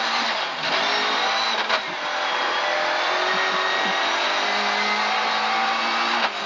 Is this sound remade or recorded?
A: recorded